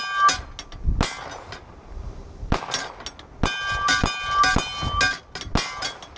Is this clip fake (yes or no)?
no